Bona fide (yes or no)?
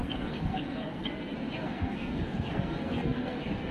no